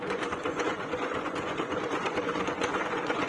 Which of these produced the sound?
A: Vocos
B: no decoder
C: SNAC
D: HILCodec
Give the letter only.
A